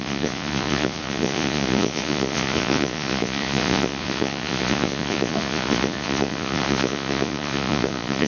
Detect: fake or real fake